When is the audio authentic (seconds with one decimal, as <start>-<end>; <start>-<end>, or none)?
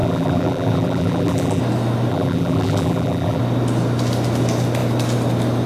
1.6-2.1; 3.4-5.7